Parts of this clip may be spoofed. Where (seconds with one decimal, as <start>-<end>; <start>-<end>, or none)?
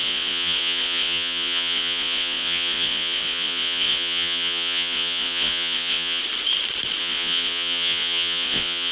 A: 0.0-6.2; 7.0-8.9